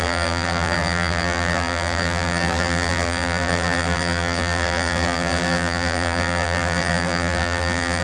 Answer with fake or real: fake